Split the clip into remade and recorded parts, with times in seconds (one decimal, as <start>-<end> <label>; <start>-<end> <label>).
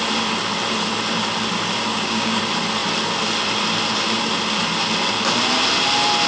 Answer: 0.0-1.9 recorded; 1.9-2.4 remade; 2.4-6.3 recorded